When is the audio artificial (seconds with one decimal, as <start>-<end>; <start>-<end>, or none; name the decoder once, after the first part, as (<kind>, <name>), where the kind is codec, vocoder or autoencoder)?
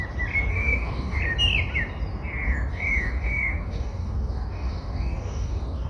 0.5-1.2 (codec, DAC); 2.7-5.9